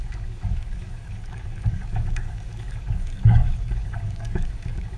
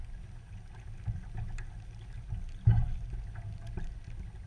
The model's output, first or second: first